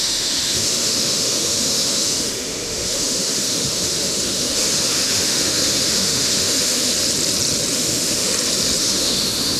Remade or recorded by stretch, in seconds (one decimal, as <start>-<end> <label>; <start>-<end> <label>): 0.0-6.9 remade; 6.9-7.7 recorded; 7.7-8.3 remade; 8.3-8.8 recorded; 8.8-9.6 remade